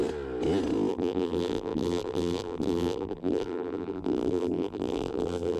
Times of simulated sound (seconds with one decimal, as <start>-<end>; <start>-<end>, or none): 0.9-5.6